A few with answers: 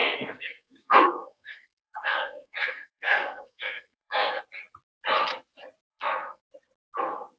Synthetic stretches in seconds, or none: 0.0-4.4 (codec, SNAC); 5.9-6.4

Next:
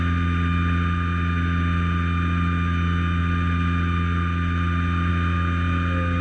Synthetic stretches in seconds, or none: none

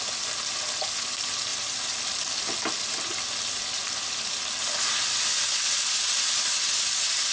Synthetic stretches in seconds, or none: 1.5-2.0 (vocoder, BigVGAN v2)

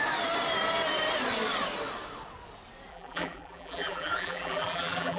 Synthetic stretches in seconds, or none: 2.9-5.2 (vocoder, BigVGAN v2)

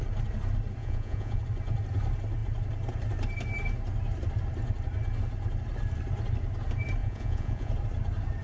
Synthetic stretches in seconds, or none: 0.8-1.4 (vocoder, Vocos); 7.0-7.7

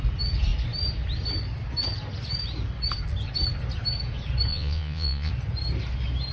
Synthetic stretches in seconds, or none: 4.5-5.3 (vocoder, Vocos)

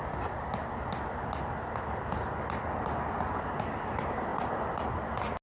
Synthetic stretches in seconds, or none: 4.3-5.0 (vocoder, BigVGAN v2)

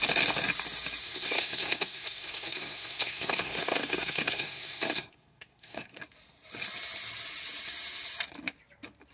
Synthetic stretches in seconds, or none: 1.0-6.0 (codec, SNAC)